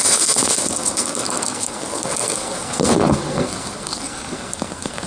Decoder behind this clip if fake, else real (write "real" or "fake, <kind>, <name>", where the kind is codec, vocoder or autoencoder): fake, codec, SNAC